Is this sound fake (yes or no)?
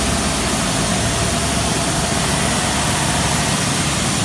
no